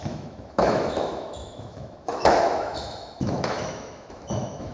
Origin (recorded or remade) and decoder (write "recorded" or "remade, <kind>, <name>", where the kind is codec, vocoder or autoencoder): remade, autoencoder, DAC-VAE